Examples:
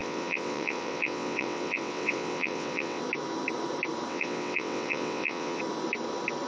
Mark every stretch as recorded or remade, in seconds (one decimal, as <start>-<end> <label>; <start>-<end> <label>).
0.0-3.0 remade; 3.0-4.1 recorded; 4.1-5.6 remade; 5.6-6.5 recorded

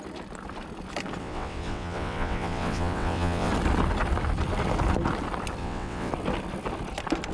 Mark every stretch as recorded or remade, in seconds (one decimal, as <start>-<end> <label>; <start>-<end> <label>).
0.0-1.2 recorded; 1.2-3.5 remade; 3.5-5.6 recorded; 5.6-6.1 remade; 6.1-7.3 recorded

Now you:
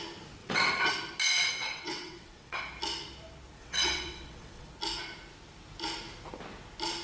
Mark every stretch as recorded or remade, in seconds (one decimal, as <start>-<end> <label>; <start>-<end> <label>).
0.0-0.4 recorded; 0.4-0.9 remade; 0.9-1.3 recorded; 1.3-2.6 remade; 2.6-3.6 recorded; 3.6-4.7 remade; 4.7-7.0 recorded